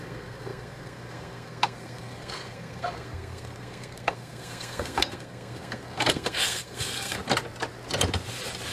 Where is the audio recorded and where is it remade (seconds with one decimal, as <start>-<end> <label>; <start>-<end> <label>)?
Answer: 0.0-7.2 remade; 7.2-8.7 recorded